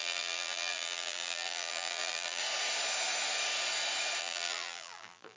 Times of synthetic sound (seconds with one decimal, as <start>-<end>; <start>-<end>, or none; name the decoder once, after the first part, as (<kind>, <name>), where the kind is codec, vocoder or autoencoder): 0.0-2.4 (vocoder, BigVGAN v2); 4.2-5.4